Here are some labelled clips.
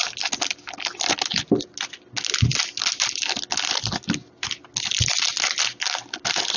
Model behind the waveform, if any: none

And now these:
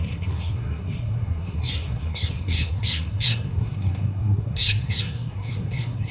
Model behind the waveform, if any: codec, SNAC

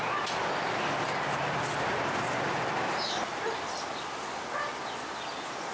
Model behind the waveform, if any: none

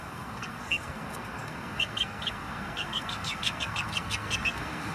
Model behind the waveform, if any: codec, SNAC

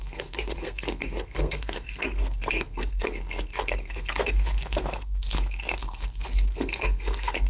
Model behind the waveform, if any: codec, SNAC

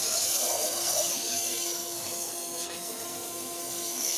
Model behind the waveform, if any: codec, SNAC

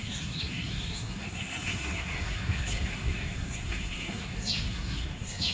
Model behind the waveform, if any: codec, SNAC